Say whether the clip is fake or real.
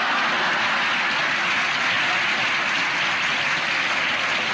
real